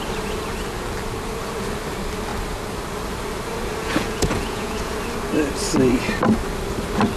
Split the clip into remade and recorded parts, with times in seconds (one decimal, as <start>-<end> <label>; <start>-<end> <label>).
0.0-3.8 recorded; 3.8-4.9 remade; 4.9-7.2 recorded